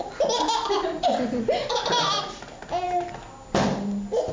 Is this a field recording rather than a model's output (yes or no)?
yes